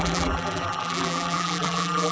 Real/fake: fake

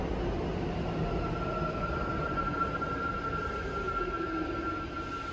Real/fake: real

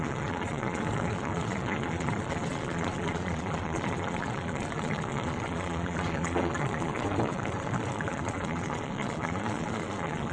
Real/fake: fake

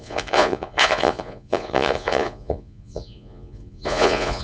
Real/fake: fake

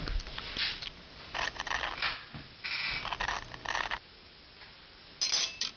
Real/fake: real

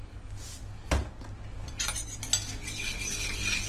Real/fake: real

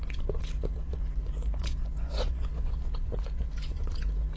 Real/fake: fake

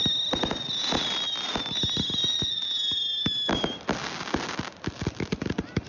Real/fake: real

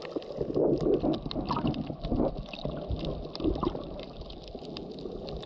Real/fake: real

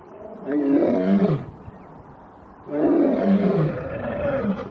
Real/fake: fake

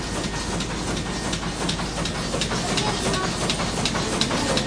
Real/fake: real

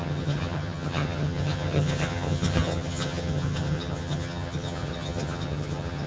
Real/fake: fake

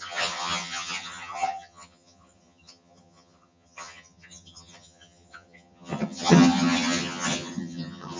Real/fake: fake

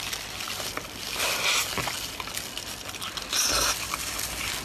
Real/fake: real